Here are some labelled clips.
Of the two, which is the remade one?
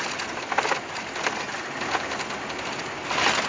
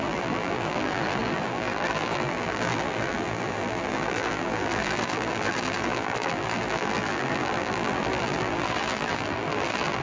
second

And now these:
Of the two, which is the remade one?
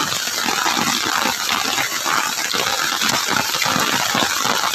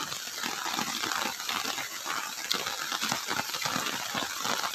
second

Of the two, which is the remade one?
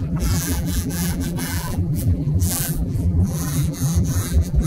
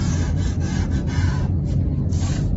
first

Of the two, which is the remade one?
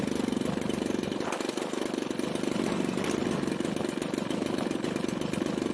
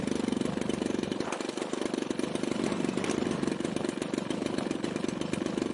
second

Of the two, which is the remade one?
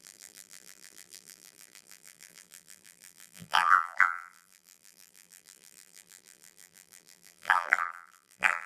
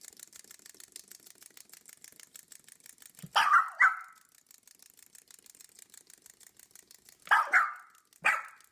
first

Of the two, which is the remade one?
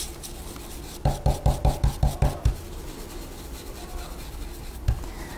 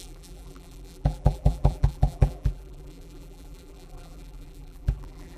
second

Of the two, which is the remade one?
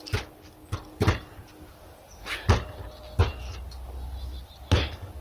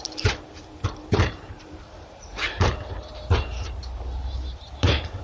second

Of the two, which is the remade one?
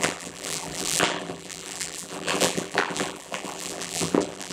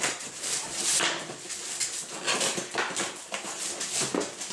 first